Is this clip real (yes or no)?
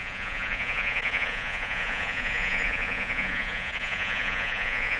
no